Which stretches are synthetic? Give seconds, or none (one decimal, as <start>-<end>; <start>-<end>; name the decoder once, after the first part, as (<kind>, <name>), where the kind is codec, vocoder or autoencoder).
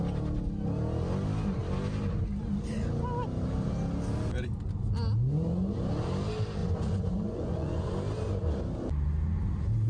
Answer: 6.6-7.9 (vocoder, Vocos)